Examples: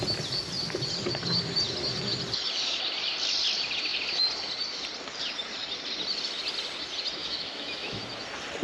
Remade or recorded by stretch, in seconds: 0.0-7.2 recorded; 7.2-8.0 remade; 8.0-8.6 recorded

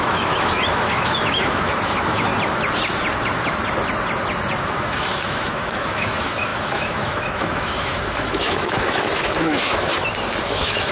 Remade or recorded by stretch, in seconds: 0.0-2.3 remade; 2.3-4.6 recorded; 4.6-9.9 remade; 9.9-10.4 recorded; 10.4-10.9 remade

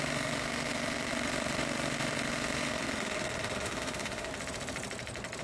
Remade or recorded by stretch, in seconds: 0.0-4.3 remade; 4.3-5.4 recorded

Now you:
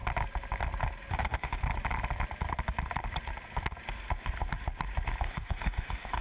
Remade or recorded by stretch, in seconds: 0.0-1.1 recorded; 1.1-1.6 remade; 1.6-5.2 recorded; 5.2-6.2 remade

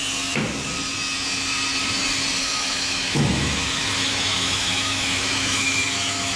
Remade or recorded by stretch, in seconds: 0.0-2.4 recorded; 2.4-6.4 remade

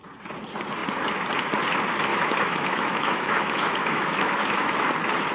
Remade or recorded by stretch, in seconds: 0.0-2.1 recorded; 2.1-4.8 remade; 4.8-5.3 recorded

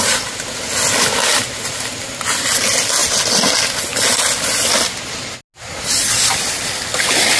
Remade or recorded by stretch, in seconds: 0.0-7.4 recorded